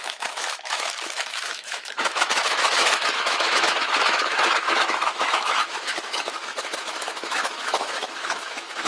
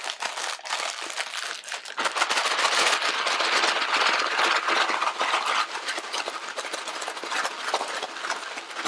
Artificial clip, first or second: first